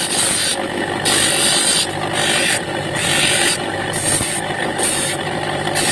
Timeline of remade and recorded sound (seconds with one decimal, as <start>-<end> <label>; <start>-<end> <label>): 0.0-2.4 recorded; 2.4-5.9 remade